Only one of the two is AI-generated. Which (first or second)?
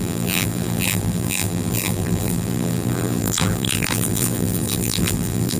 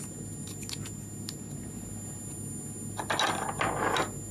first